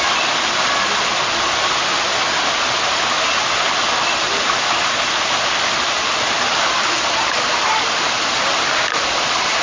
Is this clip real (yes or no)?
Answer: yes